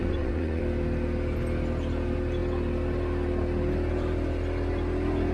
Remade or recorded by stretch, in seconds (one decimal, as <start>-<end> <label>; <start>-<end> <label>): 0.0-0.6 remade; 0.6-5.3 recorded